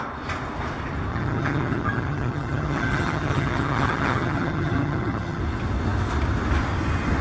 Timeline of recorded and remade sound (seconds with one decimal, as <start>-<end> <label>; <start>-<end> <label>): 0.0-1.1 recorded; 1.1-5.4 remade; 5.4-7.2 recorded